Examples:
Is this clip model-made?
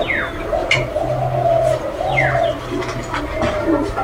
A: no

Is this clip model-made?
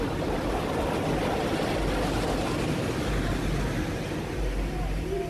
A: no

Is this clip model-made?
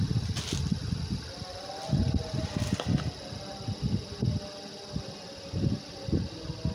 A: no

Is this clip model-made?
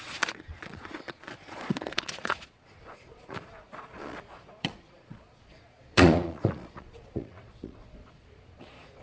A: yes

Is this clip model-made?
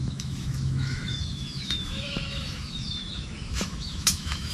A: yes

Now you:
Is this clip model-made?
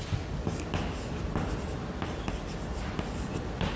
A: no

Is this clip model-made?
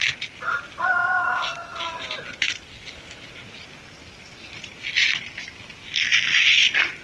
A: no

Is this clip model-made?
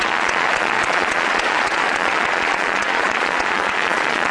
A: yes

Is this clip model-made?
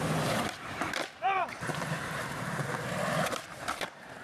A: yes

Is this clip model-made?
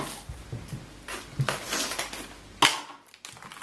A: no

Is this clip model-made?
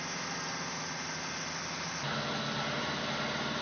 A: no